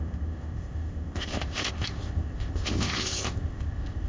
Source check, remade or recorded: remade